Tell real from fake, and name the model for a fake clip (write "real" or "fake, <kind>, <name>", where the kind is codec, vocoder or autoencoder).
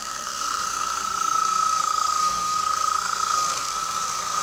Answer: fake, codec, SNAC